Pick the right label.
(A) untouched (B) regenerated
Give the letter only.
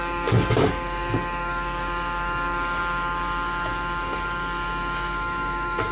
B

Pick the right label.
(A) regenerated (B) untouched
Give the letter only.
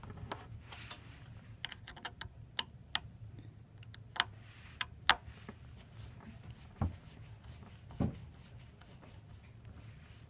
B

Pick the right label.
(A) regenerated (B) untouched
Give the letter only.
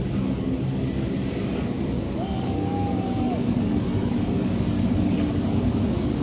A